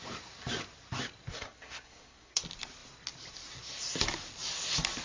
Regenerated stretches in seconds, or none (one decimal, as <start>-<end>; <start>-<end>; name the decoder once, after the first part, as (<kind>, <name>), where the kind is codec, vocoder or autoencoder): 1.3-2.4 (codec, SNAC)